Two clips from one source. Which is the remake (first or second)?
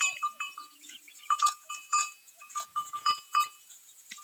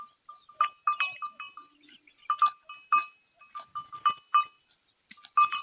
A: first